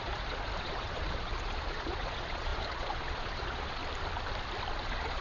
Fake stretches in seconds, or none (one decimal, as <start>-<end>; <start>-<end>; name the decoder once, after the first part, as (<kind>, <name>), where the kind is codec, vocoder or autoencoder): 0.0-3.8 (vocoder, Vocos); 4.8-5.2